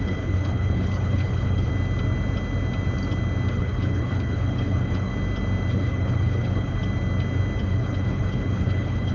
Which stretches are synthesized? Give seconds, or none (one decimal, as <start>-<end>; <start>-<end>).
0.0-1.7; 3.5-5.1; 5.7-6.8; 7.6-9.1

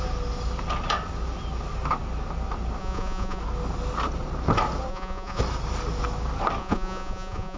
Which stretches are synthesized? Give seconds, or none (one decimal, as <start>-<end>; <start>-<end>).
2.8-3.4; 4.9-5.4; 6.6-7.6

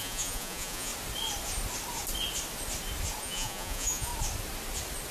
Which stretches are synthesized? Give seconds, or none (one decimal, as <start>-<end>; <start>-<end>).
0.0-0.9; 3.2-4.1

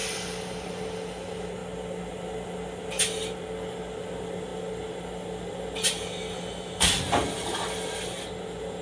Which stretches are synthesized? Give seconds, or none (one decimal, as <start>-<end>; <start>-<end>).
none

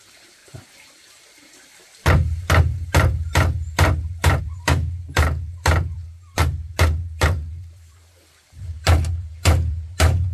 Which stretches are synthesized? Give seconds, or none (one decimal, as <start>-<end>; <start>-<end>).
0.0-10.3

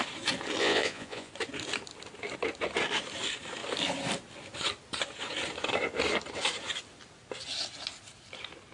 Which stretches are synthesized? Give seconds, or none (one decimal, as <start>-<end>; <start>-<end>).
0.6-1.3